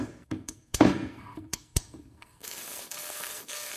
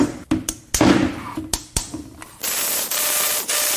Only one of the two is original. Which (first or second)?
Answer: second